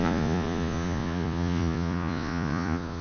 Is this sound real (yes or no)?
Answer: no